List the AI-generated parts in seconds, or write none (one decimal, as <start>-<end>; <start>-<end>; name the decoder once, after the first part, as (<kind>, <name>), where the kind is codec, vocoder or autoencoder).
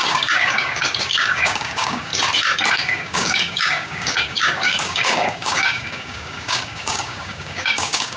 0.0-2.1 (codec, DAC); 2.7-8.2